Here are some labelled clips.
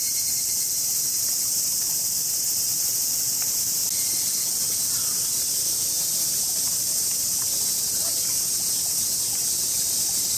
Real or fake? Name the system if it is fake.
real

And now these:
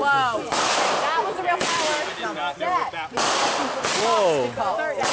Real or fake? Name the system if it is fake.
real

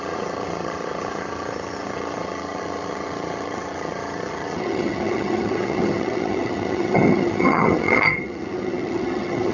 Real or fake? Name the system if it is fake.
fake, vocoder, HiFi-GAN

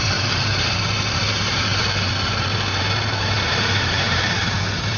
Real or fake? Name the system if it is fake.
fake, vocoder, BigVGAN v2